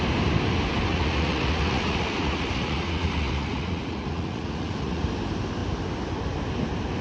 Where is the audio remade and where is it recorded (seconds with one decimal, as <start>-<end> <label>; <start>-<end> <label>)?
0.0-0.9 recorded; 0.9-5.0 remade; 5.0-7.0 recorded